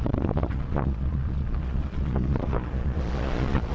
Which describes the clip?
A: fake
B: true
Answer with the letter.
A